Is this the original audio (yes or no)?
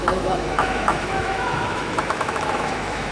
no